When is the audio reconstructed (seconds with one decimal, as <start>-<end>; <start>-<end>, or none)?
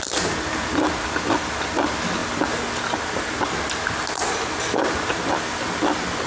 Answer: none